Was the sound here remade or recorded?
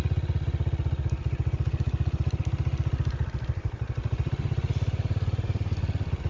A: recorded